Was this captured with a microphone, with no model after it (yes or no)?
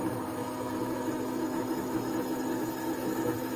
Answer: no